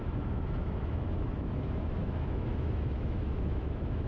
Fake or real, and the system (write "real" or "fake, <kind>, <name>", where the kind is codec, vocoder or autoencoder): fake, autoencoder, DAC-VAE